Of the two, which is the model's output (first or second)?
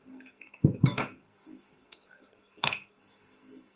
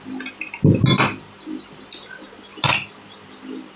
first